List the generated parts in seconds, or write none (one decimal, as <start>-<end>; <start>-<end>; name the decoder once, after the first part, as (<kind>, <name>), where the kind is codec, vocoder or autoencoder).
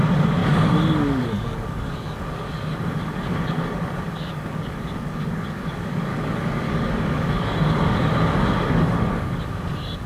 0.0-10.1 (codec, DAC)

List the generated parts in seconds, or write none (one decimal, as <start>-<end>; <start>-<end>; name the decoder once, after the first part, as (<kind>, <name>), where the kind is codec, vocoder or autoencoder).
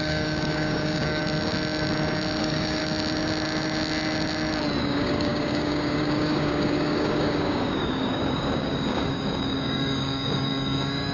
0.0-1.2 (codec, DAC); 2.4-2.8; 4.8-11.1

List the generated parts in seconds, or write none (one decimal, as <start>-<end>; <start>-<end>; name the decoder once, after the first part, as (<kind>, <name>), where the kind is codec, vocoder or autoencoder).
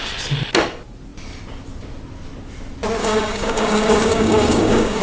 3.0-5.0 (codec, DAC)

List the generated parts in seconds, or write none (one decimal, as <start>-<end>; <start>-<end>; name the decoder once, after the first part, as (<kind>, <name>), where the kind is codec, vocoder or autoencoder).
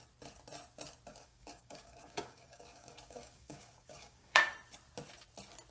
1.1-4.5 (codec, DAC)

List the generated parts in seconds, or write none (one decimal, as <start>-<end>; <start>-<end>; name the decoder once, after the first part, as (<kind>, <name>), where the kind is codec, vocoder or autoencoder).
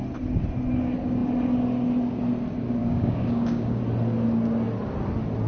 2.8-3.8 (codec, DAC)